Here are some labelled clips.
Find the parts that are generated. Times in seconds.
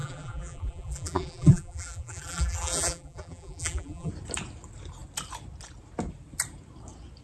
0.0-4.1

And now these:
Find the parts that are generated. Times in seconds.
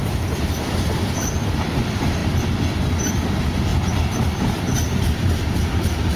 0.0-2.2; 3.1-3.7; 4.2-6.2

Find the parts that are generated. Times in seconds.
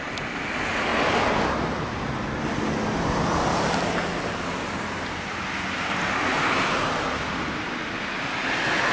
none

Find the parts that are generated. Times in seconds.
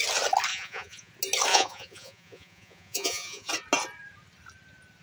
0.5-1.1; 1.5-3.5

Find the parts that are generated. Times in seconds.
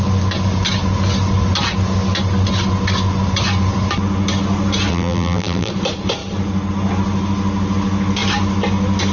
4.9-5.7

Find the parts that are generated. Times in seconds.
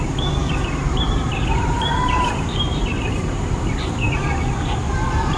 0.4-3.6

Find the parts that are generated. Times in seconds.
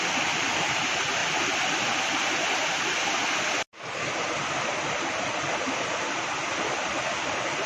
none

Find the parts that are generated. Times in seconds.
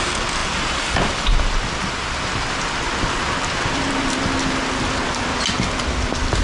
0.4-4.2